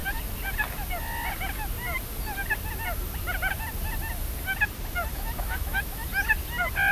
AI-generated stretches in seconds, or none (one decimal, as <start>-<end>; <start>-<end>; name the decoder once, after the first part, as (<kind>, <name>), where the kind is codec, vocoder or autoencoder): 5.1-6.1 (autoencoder, DAC-VAE)